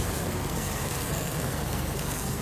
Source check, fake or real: fake